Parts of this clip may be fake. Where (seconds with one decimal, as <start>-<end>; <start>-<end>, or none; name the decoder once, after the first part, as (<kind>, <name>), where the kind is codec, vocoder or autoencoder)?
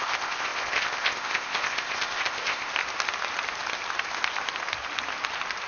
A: 0.0-2.7 (codec, ZipCodec)